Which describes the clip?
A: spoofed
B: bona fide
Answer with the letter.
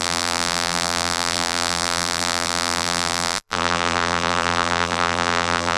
A